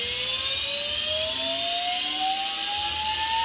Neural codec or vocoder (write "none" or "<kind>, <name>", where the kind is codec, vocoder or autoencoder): none